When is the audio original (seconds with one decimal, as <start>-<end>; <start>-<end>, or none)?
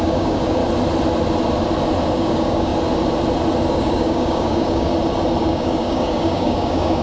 0.6-2.1; 2.7-3.7; 4.9-5.4